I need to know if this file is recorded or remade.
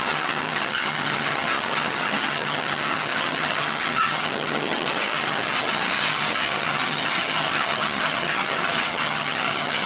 remade